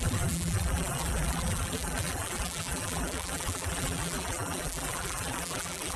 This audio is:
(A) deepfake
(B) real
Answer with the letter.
A